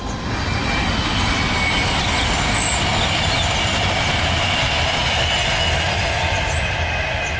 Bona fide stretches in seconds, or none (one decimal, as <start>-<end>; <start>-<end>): 0.0-7.4